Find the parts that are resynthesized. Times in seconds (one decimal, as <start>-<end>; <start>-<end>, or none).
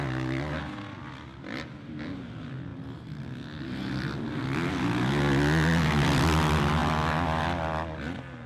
none